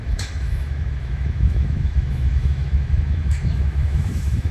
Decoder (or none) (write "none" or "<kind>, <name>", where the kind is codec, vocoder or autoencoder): autoencoder, DAC-VAE